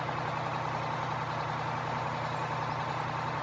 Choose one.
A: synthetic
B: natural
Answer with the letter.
B